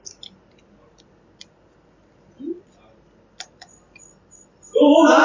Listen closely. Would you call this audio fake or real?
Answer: real